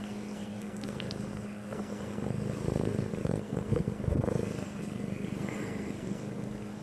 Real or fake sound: fake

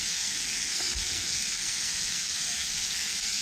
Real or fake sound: fake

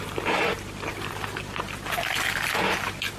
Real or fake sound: real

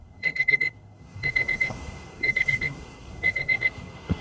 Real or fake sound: fake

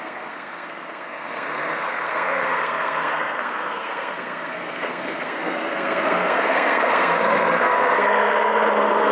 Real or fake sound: fake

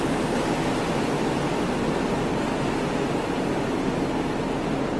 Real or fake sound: real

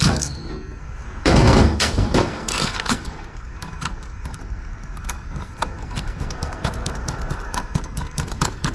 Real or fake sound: fake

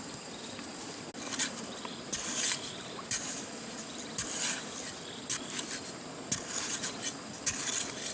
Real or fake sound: real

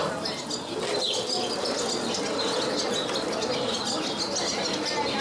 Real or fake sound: real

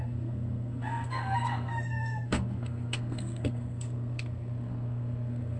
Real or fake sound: fake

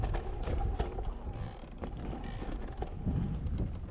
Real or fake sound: real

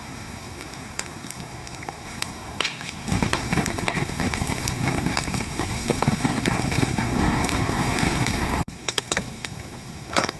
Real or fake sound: fake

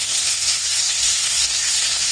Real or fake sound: fake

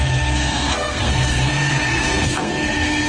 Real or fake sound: fake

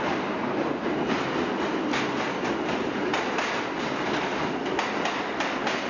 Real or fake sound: real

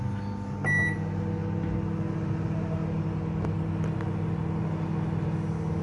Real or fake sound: real